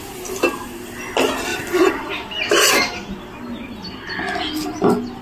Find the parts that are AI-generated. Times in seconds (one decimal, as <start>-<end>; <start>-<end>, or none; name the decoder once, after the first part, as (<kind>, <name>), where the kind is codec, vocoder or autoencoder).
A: 1.5-2.7 (vocoder, BigVGAN v2)

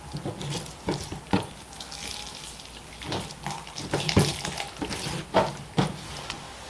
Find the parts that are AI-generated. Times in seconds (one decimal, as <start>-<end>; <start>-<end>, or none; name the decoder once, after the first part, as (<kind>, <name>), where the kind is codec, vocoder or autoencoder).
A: none

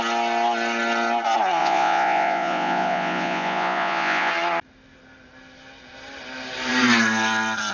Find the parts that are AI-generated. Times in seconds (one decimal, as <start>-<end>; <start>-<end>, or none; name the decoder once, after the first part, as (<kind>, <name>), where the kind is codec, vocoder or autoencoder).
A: 1.6-4.3 (vocoder, Vocos)

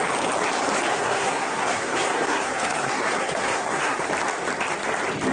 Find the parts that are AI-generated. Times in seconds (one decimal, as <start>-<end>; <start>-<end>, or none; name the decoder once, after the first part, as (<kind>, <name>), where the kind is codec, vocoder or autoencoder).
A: 0.9-4.1 (codec, SNAC)